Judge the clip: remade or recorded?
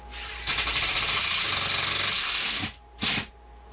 recorded